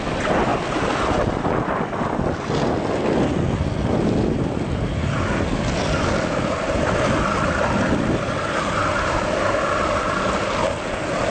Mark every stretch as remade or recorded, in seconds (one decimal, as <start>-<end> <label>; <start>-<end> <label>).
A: 0.0-11.3 recorded